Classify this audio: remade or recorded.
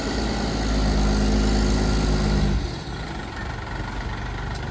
recorded